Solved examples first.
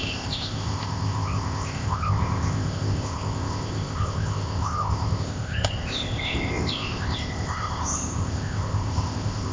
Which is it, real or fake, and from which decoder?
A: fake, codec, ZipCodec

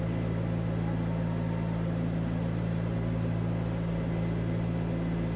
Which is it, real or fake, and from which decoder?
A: real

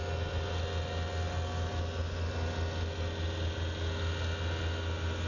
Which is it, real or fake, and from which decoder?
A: real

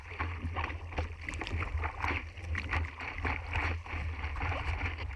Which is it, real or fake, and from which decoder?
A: real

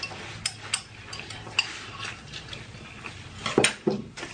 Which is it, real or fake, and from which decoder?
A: real